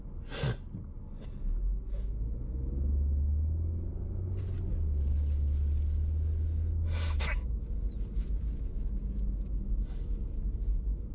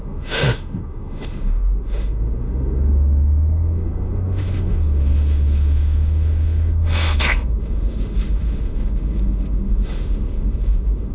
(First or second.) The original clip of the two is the first